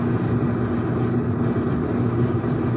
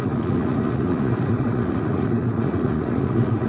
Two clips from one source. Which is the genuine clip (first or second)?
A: first